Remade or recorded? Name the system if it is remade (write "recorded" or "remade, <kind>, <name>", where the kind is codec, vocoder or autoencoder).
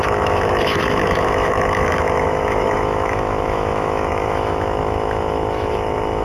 remade, autoencoder, DAC-VAE